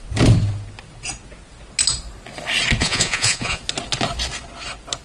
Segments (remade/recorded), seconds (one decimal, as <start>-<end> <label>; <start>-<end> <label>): 0.0-2.8 recorded; 2.8-3.6 remade; 3.6-5.0 recorded